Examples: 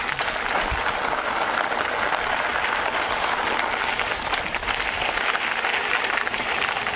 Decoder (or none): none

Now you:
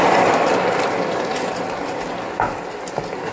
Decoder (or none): none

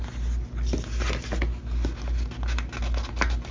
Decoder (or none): none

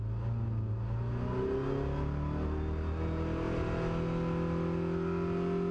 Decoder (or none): none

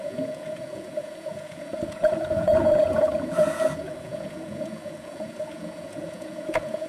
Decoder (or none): vocoder, Vocos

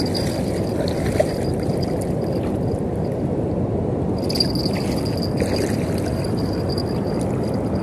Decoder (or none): none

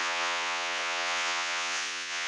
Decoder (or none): vocoder, Vocos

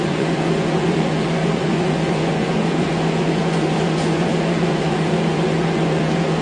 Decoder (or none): vocoder, Vocos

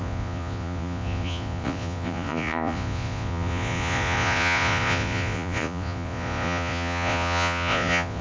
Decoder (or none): vocoder, Vocos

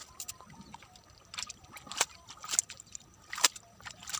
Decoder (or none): none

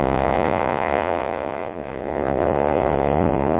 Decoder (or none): vocoder, Vocos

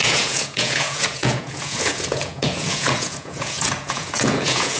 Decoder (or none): vocoder, Vocos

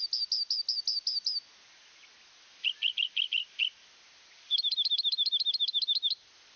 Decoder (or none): none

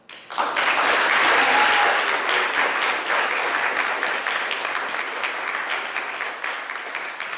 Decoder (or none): none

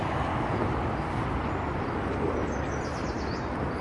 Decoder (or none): none